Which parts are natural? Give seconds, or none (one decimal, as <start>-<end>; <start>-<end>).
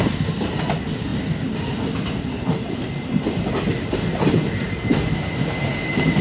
0.0-6.2